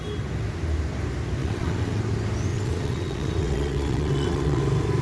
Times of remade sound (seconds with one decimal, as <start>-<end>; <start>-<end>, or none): 1.4-2.0; 2.5-4.6